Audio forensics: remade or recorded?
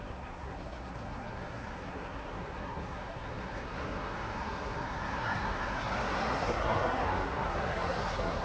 remade